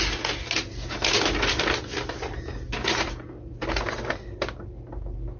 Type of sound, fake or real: real